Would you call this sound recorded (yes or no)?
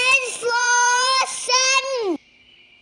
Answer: no